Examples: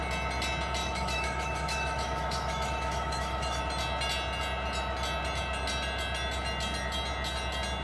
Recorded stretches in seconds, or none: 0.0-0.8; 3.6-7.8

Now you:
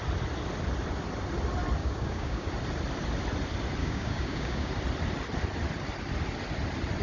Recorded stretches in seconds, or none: 0.0-1.8; 2.5-3.8; 4.7-7.0

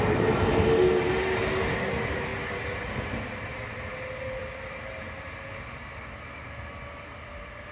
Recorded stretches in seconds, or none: 0.0-7.7